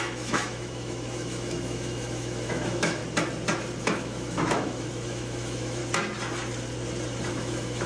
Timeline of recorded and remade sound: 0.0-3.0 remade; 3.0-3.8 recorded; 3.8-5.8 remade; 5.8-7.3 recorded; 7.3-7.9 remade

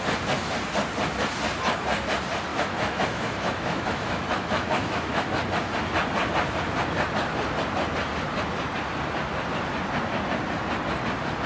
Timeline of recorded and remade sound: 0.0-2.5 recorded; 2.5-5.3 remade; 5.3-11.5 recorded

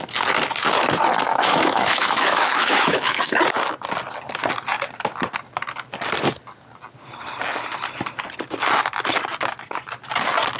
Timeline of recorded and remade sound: 0.0-1.3 recorded; 1.3-3.4 remade; 3.4-10.6 recorded

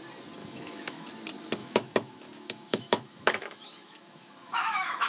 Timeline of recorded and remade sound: 0.0-0.4 recorded; 0.4-1.1 remade; 1.1-1.6 recorded; 1.6-5.1 remade

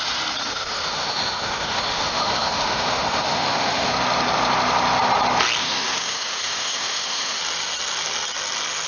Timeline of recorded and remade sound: 0.0-0.5 recorded; 0.5-3.9 remade; 3.9-5.6 recorded; 5.6-7.4 remade; 7.4-8.9 recorded

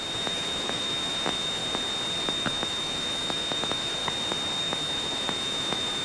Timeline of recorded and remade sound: 0.0-1.6 remade; 1.6-2.3 recorded; 2.3-4.0 remade; 4.0-4.6 recorded; 4.6-6.0 remade